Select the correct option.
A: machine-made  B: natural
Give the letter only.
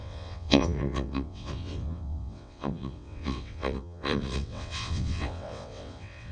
A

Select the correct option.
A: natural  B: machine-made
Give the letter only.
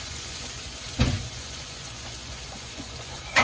B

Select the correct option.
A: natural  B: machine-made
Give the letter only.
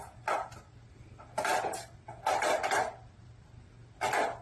A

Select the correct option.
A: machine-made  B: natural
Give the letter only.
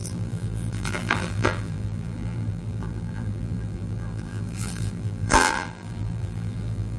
A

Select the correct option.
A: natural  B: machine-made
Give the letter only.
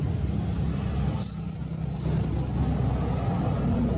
A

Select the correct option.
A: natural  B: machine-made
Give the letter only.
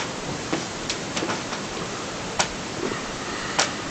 B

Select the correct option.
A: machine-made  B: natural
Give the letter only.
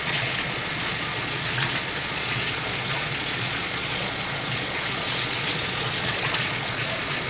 A